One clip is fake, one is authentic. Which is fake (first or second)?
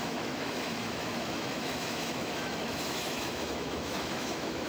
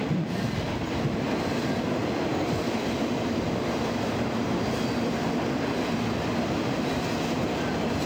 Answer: first